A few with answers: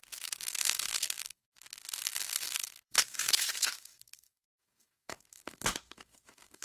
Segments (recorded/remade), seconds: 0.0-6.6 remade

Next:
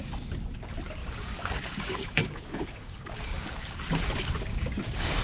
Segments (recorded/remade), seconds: 0.0-1.0 recorded; 1.0-4.1 remade; 4.1-4.5 recorded; 4.5-5.2 remade

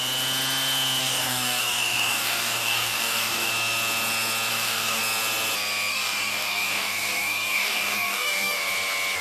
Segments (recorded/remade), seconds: 0.0-1.0 recorded; 1.0-3.5 remade; 3.5-4.5 recorded; 4.5-5.0 remade; 5.0-5.9 recorded; 5.9-8.7 remade; 8.7-9.2 recorded

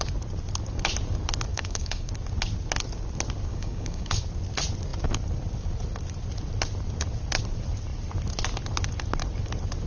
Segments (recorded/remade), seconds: 0.0-1.5 recorded; 1.5-2.1 remade; 2.1-3.5 recorded; 3.5-4.2 remade; 4.2-9.9 recorded

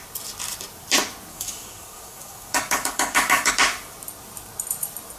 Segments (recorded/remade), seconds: 0.0-1.3 recorded; 1.3-3.5 remade; 3.5-5.2 recorded

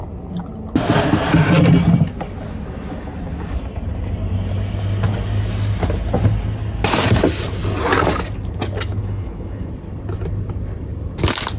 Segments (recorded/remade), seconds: 0.0-9.0 recorded; 9.0-9.7 remade; 9.7-11.6 recorded

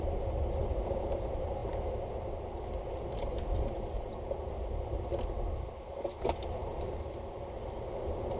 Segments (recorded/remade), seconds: 0.0-8.4 recorded